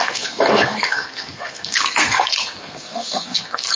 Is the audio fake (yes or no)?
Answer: yes